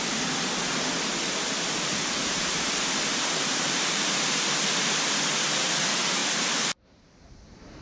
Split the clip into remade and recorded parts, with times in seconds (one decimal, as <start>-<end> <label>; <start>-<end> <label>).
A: 0.0-2.2 recorded; 2.2-4.6 remade; 4.6-6.2 recorded; 6.2-7.8 remade